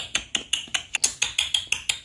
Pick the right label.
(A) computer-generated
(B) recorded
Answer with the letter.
B